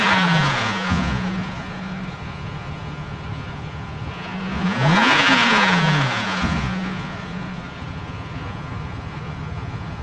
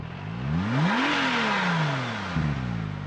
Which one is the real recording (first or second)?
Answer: second